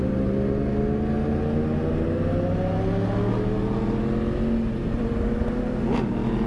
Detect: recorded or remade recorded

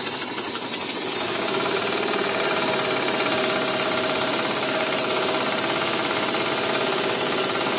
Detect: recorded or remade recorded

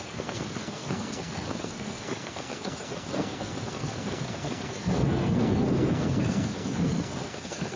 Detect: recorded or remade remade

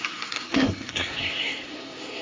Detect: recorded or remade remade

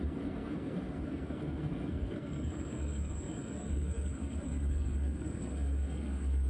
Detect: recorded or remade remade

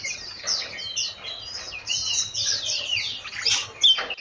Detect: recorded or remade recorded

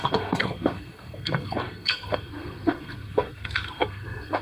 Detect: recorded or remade remade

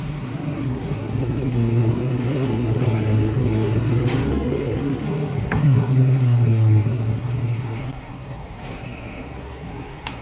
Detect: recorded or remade remade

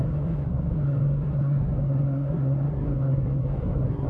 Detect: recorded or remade remade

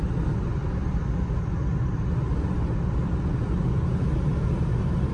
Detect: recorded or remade recorded